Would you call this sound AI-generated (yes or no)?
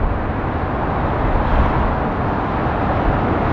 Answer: no